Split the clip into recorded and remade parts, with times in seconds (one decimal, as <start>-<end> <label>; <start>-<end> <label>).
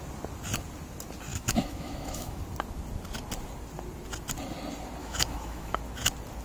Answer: 0.0-1.3 recorded; 1.3-2.4 remade; 2.4-5.0 recorded; 5.0-5.8 remade; 5.8-6.4 recorded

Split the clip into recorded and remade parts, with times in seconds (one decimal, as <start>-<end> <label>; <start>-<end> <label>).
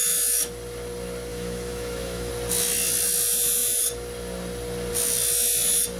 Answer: 0.0-1.3 recorded; 1.3-2.3 remade; 2.3-6.0 recorded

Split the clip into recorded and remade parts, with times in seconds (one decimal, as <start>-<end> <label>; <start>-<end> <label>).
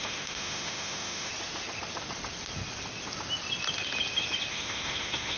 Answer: 0.0-1.3 remade; 1.3-4.5 recorded; 4.5-5.4 remade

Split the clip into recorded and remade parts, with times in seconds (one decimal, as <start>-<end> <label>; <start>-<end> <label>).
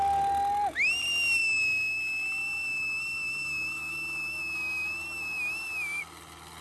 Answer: 0.0-1.4 recorded; 1.4-2.0 remade; 2.0-2.4 recorded; 2.4-6.0 remade; 6.0-6.6 recorded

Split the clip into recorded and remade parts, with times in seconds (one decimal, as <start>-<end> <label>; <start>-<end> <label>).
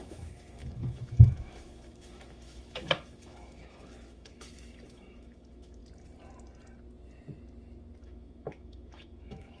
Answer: 0.0-5.8 remade; 5.8-8.0 recorded; 8.0-9.6 remade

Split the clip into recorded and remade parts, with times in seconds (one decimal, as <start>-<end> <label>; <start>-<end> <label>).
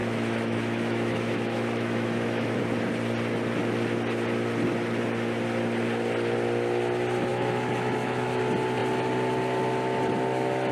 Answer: 0.0-2.6 remade; 2.6-7.3 recorded; 7.3-8.4 remade; 8.4-10.7 recorded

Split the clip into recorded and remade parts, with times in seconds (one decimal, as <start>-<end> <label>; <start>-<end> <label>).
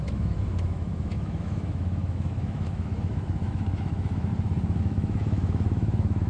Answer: 0.0-4.3 remade; 4.3-4.8 recorded; 4.8-6.3 remade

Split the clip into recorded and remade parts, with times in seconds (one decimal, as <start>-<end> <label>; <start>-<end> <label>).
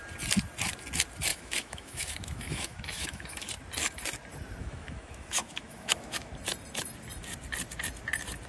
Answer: 0.0-1.3 recorded; 1.3-3.5 remade; 3.5-4.6 recorded; 4.6-6.3 remade; 6.3-8.5 recorded